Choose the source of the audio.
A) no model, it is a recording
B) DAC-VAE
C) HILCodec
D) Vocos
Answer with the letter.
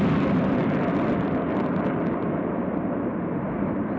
A